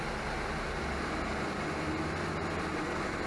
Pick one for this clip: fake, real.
real